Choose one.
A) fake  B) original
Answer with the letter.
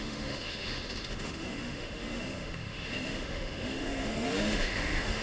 A